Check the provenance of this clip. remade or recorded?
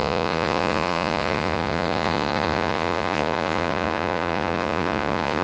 remade